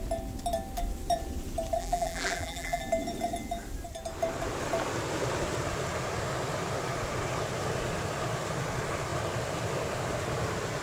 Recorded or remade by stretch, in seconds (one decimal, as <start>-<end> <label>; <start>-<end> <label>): 0.0-1.8 recorded; 1.8-2.8 remade; 2.8-10.8 recorded